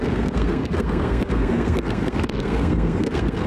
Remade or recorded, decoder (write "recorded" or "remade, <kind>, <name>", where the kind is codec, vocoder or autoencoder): remade, codec, SNAC